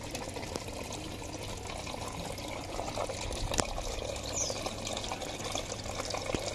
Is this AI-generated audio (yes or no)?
no